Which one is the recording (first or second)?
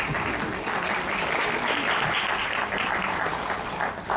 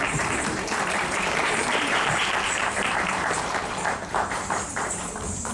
first